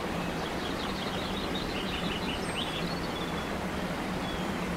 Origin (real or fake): real